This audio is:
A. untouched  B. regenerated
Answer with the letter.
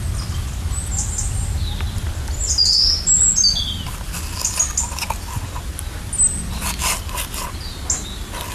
A